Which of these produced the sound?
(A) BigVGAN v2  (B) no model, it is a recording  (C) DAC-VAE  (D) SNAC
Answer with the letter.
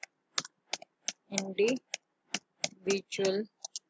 B